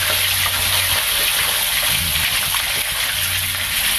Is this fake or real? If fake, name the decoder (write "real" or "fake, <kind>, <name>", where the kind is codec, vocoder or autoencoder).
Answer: real